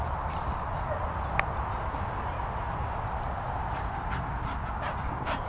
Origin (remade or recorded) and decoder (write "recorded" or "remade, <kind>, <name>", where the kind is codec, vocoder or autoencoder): recorded